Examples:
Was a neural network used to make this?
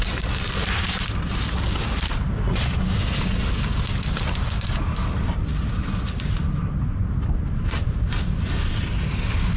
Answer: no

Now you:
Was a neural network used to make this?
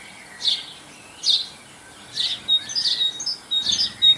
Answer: no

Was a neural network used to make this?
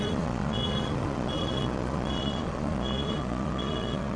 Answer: yes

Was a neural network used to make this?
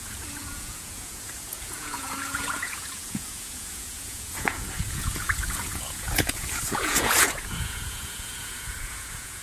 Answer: yes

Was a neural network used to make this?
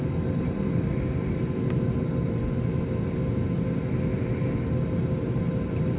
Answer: no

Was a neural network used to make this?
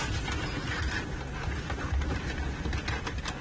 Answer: no